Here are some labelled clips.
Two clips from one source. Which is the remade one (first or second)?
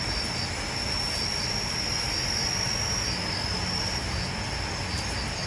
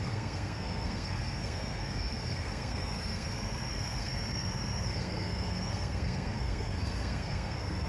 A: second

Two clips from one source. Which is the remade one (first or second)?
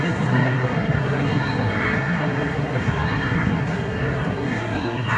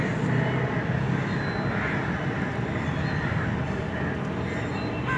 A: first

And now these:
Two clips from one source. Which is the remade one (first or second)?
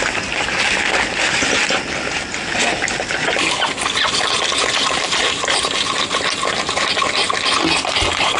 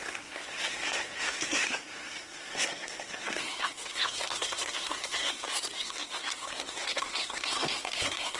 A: second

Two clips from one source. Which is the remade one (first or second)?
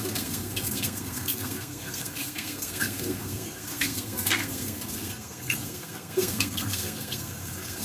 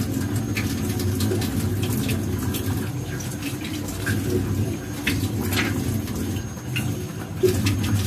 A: first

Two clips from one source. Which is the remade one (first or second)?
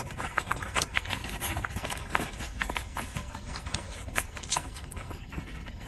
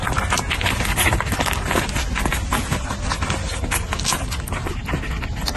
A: first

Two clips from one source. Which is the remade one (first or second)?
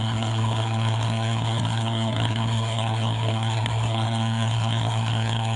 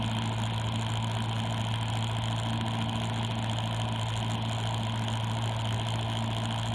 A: first